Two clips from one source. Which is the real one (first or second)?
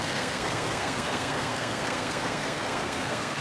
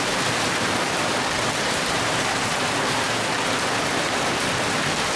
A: second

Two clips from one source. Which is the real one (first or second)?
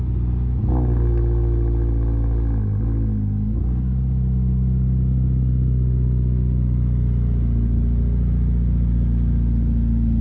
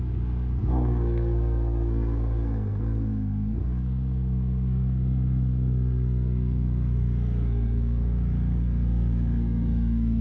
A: first